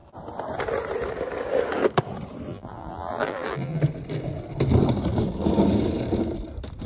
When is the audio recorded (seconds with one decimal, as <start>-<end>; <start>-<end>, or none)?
0.0-2.5; 3.8-6.9